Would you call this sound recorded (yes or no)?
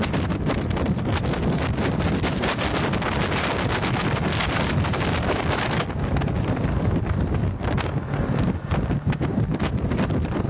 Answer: yes